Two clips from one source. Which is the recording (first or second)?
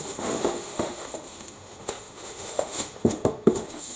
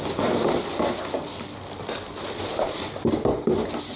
second